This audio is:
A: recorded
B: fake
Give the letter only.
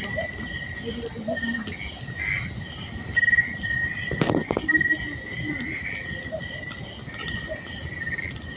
A